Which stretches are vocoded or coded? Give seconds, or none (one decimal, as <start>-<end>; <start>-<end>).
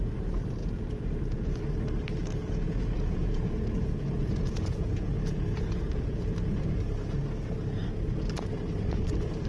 0.6-1.6; 2.2-6.7